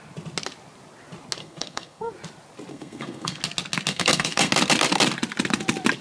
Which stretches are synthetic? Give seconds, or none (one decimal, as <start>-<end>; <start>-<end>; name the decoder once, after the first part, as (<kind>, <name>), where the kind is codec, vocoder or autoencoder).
1.4-2.1 (codec, SNAC); 2.7-3.4; 3.9-4.5